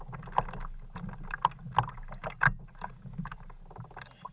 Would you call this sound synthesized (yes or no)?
no